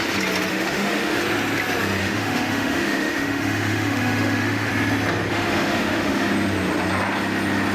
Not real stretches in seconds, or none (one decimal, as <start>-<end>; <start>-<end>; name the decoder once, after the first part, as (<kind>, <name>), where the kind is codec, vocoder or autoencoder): 0.5-1.2 (autoencoder, DAC-VAE); 2.0-4.7; 5.3-6.3